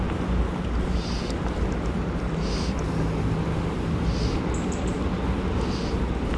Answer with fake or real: real